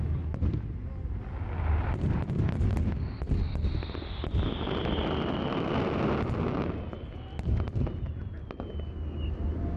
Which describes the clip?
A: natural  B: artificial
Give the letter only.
A